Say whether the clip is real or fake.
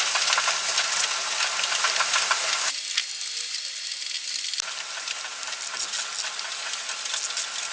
real